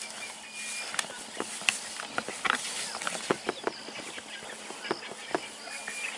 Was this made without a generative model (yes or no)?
yes